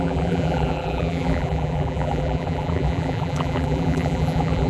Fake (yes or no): yes